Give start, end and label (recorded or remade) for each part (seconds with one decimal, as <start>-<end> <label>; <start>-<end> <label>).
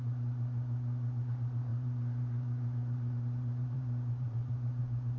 0.0-1.7 recorded; 1.7-4.8 remade; 4.8-5.2 recorded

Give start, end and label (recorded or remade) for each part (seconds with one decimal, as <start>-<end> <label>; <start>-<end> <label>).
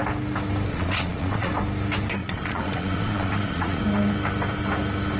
0.0-0.7 recorded; 0.7-1.5 remade; 1.5-2.2 recorded; 2.2-3.8 remade; 3.8-5.2 recorded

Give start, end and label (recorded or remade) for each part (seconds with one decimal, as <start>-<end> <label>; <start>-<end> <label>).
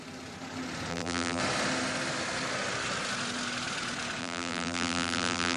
0.0-0.9 recorded; 0.9-1.4 remade; 1.4-4.2 recorded; 4.2-5.6 remade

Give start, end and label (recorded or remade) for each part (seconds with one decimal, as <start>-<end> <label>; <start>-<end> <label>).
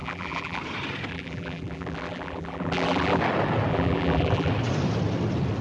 0.0-0.6 remade; 0.6-1.1 recorded; 1.1-3.2 remade; 3.2-3.7 recorded; 3.7-4.5 remade; 4.5-5.6 recorded